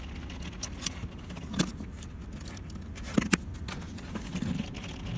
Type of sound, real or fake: real